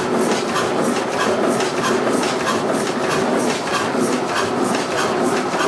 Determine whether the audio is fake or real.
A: real